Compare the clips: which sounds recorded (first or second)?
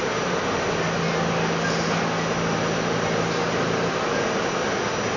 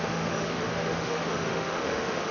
first